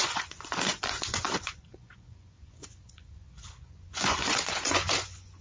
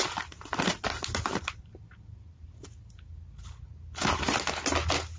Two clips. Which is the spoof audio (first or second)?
first